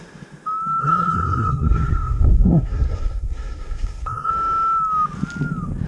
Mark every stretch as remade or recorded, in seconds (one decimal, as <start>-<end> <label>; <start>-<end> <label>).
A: 0.0-0.8 recorded; 0.8-4.3 remade; 4.3-5.9 recorded